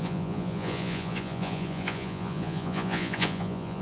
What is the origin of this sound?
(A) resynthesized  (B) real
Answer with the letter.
A